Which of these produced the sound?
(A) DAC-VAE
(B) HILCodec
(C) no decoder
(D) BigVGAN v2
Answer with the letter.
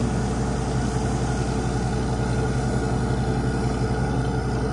C